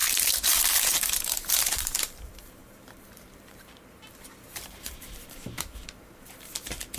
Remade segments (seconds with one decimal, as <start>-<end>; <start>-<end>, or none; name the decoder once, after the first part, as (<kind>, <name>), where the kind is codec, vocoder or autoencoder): 0.7-7.0 (vocoder, BigVGAN v2)